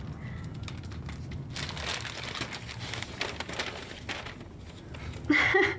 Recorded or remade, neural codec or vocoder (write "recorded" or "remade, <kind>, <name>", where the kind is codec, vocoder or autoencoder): recorded